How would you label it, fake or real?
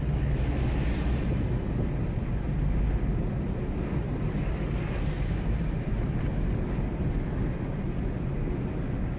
real